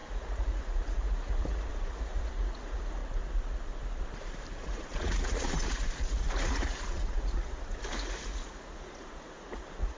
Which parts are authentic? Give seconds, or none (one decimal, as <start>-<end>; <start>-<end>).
3.0-4.6